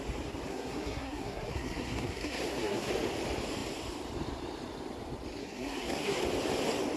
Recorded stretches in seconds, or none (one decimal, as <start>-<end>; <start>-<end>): 0.0-0.5; 2.9-5.4; 6.2-7.0